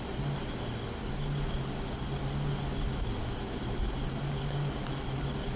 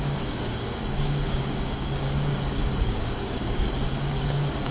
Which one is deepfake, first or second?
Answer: second